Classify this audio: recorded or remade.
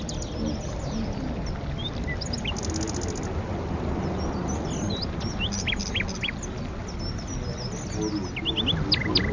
recorded